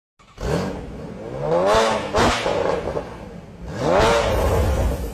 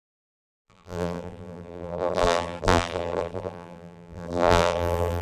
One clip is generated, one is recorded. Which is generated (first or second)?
second